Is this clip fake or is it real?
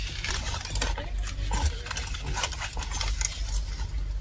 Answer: real